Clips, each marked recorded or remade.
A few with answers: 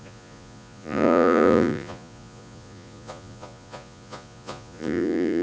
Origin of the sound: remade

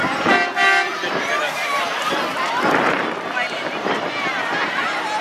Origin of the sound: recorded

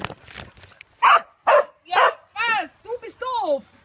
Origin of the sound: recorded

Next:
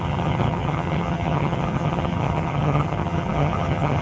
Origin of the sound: remade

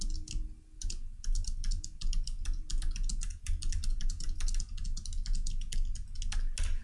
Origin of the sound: recorded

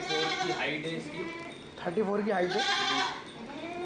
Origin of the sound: recorded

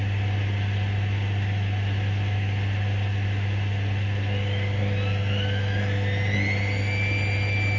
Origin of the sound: recorded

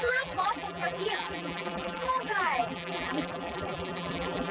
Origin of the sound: remade